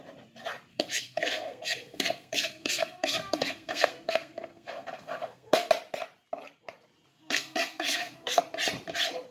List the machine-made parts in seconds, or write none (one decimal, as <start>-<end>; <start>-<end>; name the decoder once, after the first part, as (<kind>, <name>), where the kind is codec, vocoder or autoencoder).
0.7-5.7 (codec, SNAC); 7.1-8.4